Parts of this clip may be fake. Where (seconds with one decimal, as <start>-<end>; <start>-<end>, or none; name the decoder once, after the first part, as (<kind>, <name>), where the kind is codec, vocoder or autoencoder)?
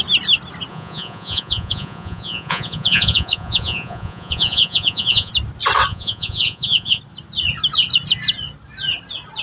0.7-5.3 (vocoder, Vocos); 5.9-7.0